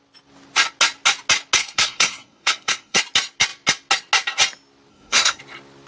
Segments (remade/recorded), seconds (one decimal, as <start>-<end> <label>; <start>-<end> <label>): 0.0-1.6 recorded; 1.6-3.0 remade; 3.0-4.9 recorded; 4.9-5.4 remade; 5.4-5.9 recorded